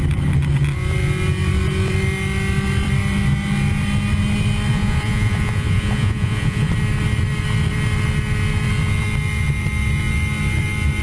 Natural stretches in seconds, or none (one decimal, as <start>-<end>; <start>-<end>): 0.0-4.7; 6.7-11.0